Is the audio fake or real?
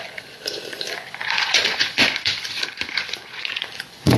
fake